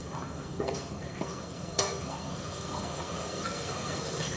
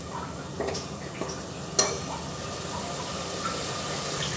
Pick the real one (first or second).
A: second